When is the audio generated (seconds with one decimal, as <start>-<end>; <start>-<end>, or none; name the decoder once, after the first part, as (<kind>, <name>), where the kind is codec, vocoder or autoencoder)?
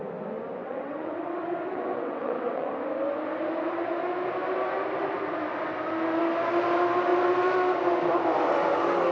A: 0.6-2.7 (vocoder, WaveNeXt)